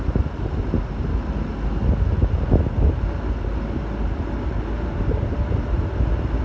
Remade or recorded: recorded